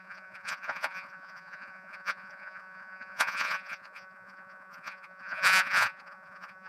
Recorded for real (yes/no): no